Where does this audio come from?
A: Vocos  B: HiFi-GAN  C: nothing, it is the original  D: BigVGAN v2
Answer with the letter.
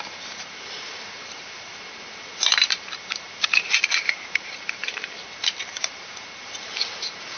D